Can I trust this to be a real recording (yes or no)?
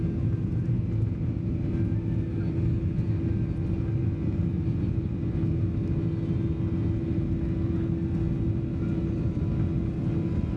yes